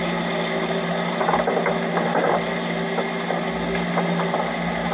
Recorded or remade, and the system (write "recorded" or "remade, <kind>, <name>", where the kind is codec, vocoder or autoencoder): recorded